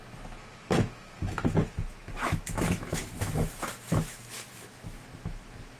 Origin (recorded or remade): remade